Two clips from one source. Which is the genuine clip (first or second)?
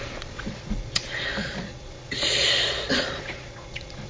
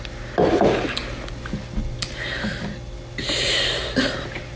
second